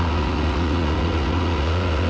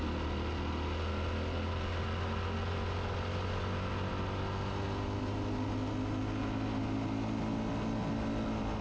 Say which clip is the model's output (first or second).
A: first